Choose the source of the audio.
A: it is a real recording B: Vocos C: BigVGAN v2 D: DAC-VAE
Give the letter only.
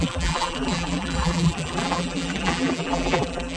C